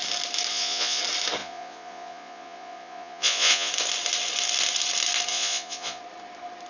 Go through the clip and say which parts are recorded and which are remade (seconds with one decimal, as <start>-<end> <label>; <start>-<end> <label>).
0.0-0.5 recorded; 0.5-1.0 remade; 1.0-1.4 recorded; 1.4-3.7 remade; 3.7-5.3 recorded; 5.3-6.0 remade; 6.0-6.7 recorded